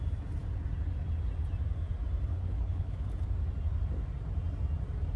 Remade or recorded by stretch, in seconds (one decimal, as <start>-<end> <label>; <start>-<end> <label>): 0.0-2.3 recorded; 2.3-3.1 remade; 3.1-5.2 recorded